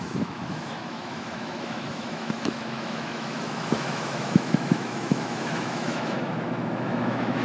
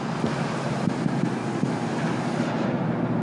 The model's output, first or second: first